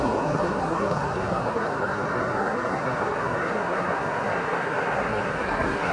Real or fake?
fake